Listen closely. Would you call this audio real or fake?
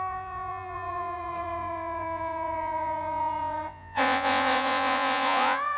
fake